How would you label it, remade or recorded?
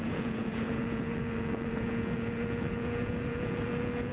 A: remade